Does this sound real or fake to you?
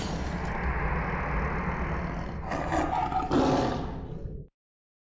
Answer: real